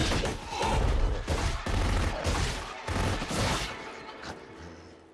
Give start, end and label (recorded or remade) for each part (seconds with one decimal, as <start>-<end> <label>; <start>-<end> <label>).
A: 0.0-5.1 recorded